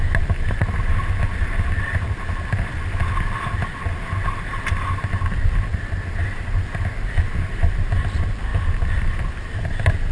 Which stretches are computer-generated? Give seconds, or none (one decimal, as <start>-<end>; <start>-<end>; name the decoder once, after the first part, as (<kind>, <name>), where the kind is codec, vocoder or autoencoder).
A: none